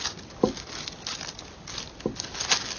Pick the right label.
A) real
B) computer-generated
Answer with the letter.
A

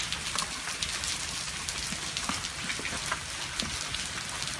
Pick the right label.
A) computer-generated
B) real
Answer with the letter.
B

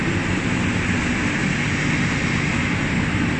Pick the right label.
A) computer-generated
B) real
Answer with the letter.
B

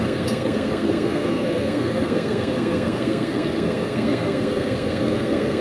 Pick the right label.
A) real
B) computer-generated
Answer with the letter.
B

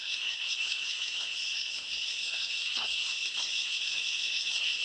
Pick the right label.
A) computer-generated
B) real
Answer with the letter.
A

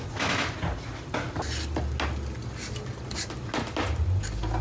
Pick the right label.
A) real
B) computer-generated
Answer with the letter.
A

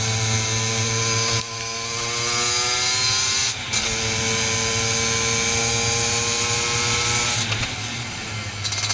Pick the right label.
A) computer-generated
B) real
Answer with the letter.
B